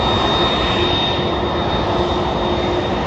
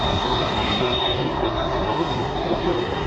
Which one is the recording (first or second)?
first